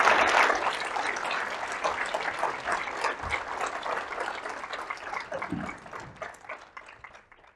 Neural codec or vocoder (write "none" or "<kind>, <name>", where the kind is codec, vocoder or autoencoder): none